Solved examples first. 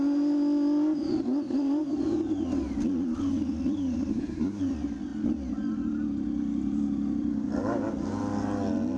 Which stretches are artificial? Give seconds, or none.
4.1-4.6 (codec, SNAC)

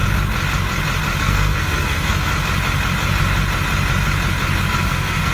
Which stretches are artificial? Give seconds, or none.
1.2-2.3 (codec, SNAC); 4.6-5.3

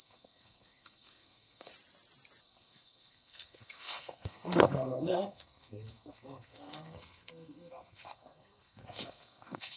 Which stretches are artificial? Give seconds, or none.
0.0-1.7 (codec, SNAC); 2.4-9.8